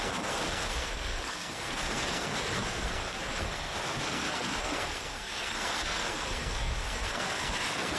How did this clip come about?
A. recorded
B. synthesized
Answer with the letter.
B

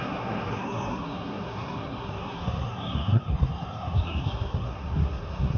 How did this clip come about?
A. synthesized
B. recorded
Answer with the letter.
A